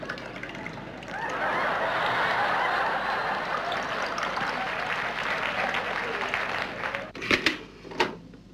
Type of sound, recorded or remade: recorded